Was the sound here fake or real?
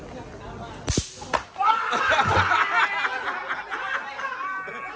real